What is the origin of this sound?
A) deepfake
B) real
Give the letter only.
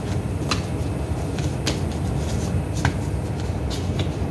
B